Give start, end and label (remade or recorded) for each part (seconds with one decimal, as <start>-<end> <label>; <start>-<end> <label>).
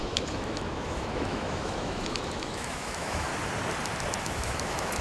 0.0-3.3 remade; 3.3-4.2 recorded; 4.2-5.0 remade